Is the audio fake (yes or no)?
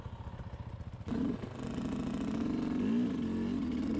no